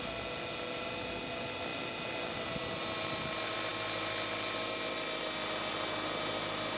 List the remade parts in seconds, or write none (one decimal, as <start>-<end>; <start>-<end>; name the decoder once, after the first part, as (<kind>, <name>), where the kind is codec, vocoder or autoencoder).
none